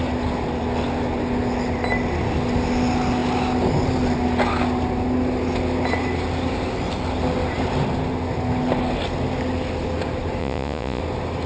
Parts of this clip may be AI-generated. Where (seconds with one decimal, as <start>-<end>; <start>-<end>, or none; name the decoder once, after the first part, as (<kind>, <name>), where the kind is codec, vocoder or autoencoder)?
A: 10.4-11.0 (vocoder, Vocos)